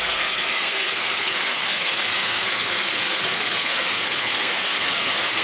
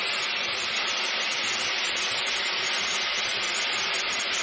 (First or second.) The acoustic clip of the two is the second